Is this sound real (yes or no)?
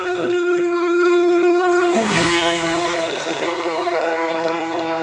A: no